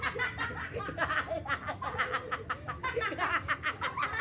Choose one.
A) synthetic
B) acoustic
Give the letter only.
B